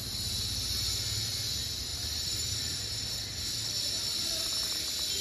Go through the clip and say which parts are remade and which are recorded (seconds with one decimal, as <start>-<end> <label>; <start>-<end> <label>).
0.0-1.9 recorded; 1.9-3.1 remade; 3.1-4.0 recorded; 4.0-4.5 remade; 4.5-5.2 recorded